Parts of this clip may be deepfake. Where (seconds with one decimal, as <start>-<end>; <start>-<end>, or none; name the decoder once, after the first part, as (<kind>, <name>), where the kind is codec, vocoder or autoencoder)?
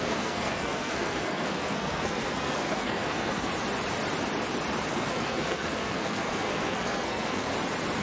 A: 0.0-3.5 (codec, SNAC); 4.9-7.5